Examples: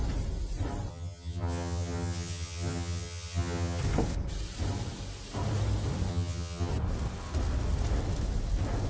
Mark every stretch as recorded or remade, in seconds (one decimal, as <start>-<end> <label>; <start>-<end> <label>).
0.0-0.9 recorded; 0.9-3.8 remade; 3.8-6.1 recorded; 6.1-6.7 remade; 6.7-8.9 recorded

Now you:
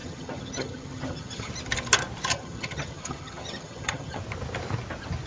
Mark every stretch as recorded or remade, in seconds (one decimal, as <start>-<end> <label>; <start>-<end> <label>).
0.0-1.5 remade; 1.5-2.3 recorded; 2.3-4.2 remade; 4.2-5.3 recorded

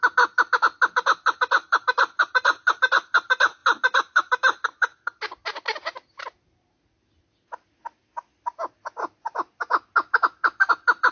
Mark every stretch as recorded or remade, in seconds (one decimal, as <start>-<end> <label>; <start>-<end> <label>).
0.0-11.1 recorded

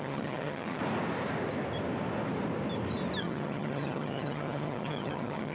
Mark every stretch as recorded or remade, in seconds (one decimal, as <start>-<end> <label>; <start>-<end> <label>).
0.0-0.8 remade; 0.8-3.2 recorded; 3.2-5.5 remade

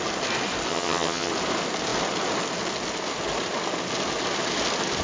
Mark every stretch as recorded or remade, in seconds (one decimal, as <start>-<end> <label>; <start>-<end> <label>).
0.0-0.7 recorded; 0.7-1.3 remade; 1.3-5.0 recorded